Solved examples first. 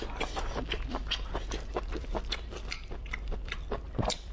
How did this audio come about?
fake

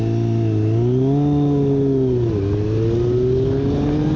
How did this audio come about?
real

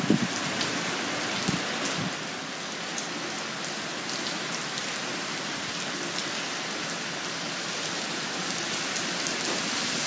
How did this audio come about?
real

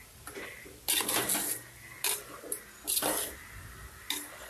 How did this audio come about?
real